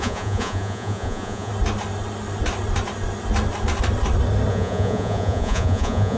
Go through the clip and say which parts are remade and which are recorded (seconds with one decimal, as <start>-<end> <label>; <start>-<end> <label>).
0.0-1.5 remade; 1.5-4.5 recorded; 4.5-6.2 remade